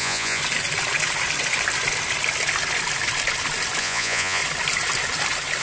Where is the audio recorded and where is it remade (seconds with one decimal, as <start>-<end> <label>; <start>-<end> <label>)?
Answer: 0.0-0.4 remade; 0.4-3.8 recorded; 3.8-4.4 remade; 4.4-5.6 recorded